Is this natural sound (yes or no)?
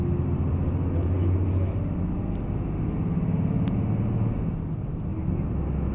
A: yes